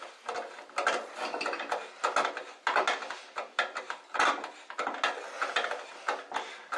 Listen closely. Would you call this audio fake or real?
real